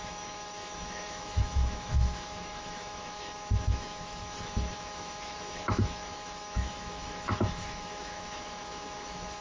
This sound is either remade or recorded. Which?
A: remade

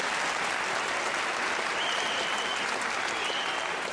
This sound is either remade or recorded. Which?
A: recorded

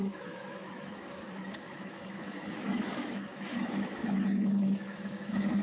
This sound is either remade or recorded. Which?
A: remade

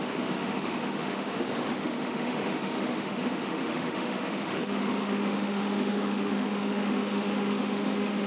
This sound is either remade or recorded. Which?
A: remade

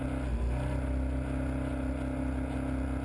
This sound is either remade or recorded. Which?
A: recorded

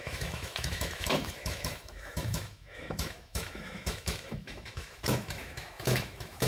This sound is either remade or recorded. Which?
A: remade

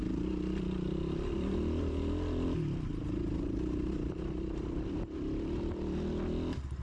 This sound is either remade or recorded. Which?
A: recorded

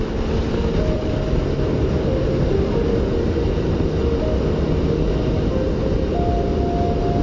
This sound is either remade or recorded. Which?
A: recorded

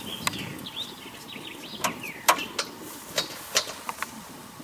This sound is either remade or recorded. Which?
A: recorded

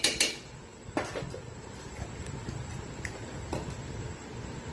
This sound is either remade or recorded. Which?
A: recorded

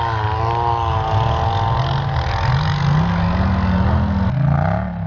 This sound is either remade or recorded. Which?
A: recorded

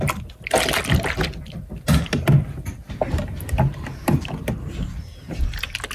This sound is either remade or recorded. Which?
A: recorded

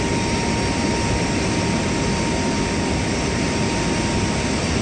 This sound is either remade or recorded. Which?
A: recorded